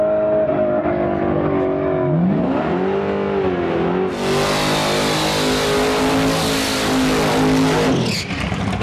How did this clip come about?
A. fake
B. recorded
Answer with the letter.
B